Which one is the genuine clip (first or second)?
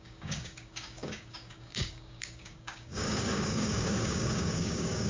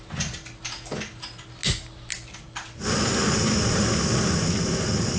second